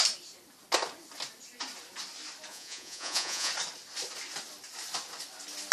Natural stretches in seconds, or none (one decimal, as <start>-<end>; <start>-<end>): 0.0-2.5; 3.5-5.7